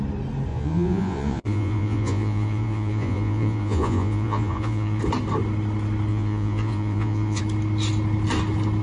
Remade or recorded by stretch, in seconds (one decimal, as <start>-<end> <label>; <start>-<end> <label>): 0.0-0.5 recorded; 0.5-5.0 remade; 5.0-6.1 recorded; 6.1-7.4 remade; 7.4-8.8 recorded